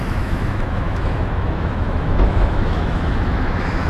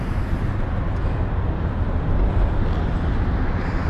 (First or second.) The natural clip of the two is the second